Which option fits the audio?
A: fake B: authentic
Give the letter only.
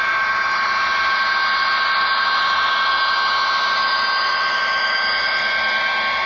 B